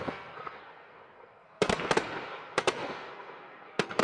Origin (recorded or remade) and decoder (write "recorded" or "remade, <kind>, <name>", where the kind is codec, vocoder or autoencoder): remade, codec, SNAC